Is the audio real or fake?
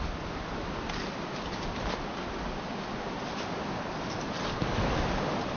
real